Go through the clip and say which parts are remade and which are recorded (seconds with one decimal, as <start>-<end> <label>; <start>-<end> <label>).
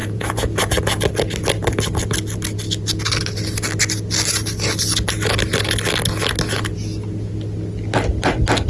0.0-0.8 remade; 0.8-8.7 recorded